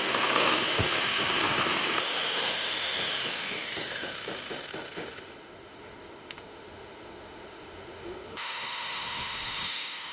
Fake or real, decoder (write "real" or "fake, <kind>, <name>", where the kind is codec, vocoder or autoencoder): fake, autoencoder, DAC-VAE